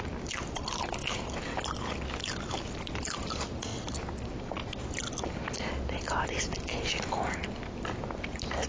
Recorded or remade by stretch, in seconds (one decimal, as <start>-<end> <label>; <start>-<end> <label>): 0.0-8.7 recorded